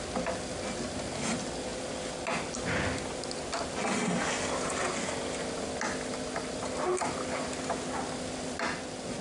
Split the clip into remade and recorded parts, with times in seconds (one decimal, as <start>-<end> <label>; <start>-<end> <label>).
0.0-9.2 recorded